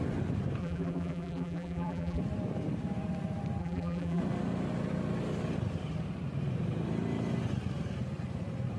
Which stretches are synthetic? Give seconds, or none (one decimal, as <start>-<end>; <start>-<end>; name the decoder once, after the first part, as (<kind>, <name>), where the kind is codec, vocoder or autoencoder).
0.6-2.2 (vocoder, BigVGAN v2); 3.6-4.2